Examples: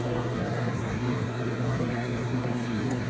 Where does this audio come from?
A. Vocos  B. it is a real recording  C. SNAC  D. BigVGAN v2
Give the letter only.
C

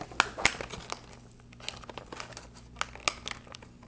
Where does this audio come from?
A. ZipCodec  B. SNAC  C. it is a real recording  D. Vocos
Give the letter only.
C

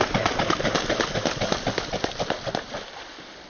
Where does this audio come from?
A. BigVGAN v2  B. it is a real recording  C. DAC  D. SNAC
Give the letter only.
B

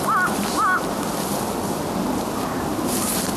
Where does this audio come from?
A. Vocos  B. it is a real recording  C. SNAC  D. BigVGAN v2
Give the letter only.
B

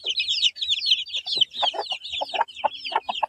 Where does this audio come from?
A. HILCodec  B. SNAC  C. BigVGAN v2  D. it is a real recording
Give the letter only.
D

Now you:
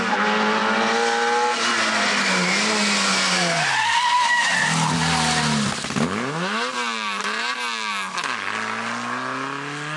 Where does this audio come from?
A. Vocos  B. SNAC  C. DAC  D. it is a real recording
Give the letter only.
D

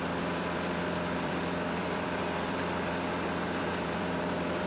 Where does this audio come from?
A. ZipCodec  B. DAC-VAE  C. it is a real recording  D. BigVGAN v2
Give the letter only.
D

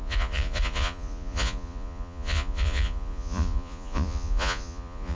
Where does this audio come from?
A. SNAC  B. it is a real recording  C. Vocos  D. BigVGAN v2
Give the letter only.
C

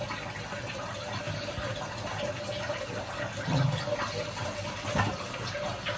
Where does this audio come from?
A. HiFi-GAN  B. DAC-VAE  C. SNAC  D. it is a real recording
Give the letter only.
D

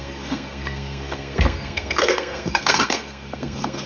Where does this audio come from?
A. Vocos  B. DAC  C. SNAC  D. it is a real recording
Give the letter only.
C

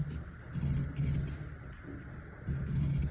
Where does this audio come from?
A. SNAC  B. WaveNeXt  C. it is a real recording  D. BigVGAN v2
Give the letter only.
C